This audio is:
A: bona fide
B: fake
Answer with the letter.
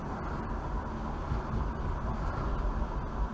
A